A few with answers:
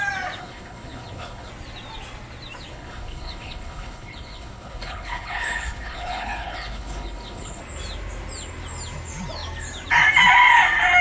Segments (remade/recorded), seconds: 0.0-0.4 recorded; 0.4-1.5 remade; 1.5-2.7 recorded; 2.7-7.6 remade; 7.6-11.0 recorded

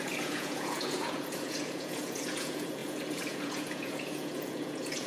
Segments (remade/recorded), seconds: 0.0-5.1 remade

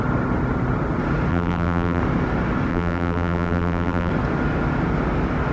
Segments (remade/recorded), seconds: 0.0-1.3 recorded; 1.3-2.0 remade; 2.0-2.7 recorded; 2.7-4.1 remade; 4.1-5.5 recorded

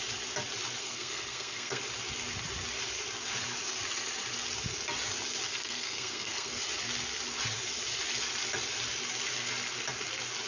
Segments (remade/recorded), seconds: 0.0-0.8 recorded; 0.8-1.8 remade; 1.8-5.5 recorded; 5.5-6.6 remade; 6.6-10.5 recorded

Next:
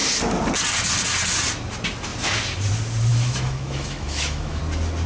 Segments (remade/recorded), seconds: 0.0-3.1 recorded; 3.1-4.6 remade; 4.6-5.1 recorded

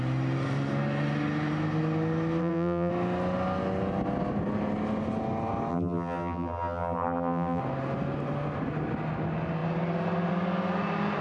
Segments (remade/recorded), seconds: 0.0-2.4 recorded; 2.4-2.9 remade; 2.9-5.7 recorded; 5.7-7.6 remade; 7.6-11.2 recorded